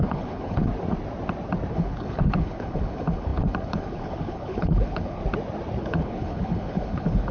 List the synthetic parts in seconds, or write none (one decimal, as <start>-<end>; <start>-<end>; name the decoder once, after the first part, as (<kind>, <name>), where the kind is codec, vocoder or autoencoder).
0.0-0.7 (codec, HILCodec); 1.7-5.2; 5.8-7.3